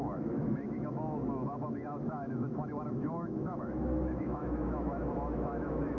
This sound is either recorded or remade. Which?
remade